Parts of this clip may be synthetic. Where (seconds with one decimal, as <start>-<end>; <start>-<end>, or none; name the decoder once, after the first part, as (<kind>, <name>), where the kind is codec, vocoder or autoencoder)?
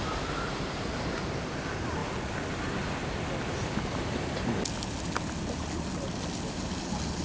none